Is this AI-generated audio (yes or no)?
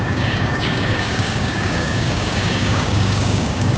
yes